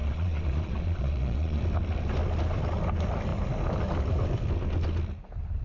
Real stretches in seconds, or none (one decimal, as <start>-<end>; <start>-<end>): 1.6-5.6